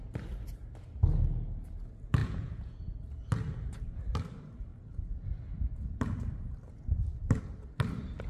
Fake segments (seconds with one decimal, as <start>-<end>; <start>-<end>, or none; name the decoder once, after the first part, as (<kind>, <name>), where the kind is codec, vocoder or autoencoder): 2.2-2.8 (vocoder, Vocos)